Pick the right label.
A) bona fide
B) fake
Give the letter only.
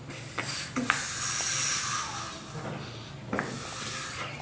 A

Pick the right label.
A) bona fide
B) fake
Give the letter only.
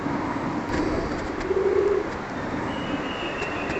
A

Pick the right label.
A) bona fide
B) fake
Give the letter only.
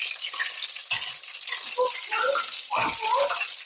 A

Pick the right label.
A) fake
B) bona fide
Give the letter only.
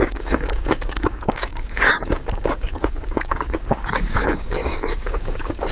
A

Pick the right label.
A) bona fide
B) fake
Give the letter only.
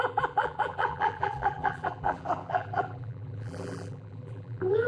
B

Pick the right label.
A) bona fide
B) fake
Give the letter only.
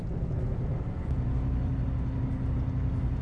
A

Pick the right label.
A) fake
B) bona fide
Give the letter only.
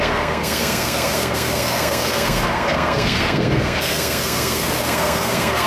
A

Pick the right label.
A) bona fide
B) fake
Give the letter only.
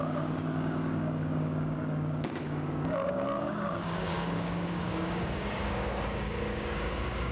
B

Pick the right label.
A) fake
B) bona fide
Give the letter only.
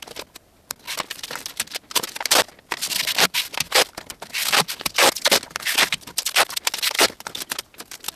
B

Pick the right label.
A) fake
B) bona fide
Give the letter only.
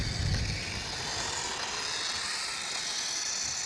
B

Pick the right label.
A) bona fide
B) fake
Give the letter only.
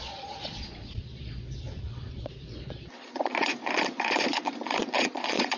B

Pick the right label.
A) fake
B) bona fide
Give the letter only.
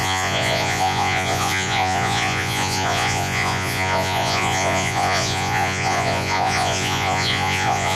A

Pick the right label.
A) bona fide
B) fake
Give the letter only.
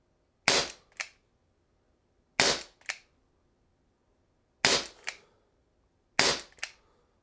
A